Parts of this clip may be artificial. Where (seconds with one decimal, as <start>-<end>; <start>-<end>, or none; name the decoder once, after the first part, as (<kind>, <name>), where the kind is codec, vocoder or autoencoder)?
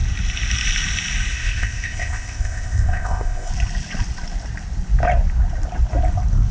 1.3-3.5 (codec, ZipCodec)